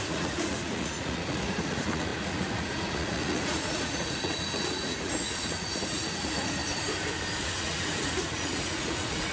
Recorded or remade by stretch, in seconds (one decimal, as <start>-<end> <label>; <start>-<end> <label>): 0.0-6.6 remade; 6.6-7.4 recorded; 7.4-9.3 remade